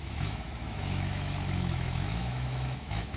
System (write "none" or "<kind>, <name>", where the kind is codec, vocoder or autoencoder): autoencoder, DAC-VAE